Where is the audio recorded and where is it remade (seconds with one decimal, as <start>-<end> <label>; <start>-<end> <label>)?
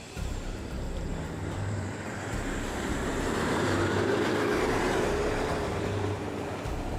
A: 0.0-7.0 remade